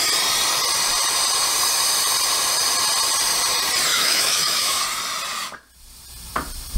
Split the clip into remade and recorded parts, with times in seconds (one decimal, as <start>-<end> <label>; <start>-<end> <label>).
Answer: 0.0-3.9 recorded; 3.9-4.8 remade; 4.8-6.8 recorded